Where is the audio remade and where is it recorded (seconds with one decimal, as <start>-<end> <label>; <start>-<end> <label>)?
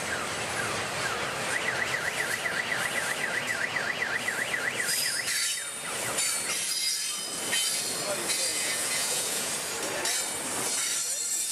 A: 0.0-8.5 recorded; 8.5-9.5 remade; 9.5-11.5 recorded